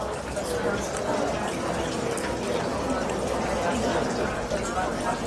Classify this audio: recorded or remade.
recorded